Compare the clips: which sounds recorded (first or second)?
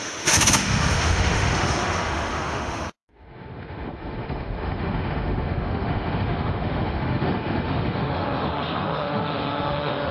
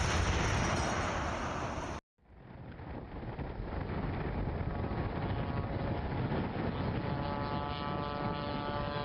second